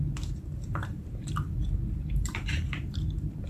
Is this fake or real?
fake